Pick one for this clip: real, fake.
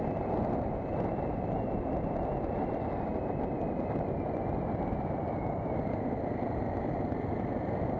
real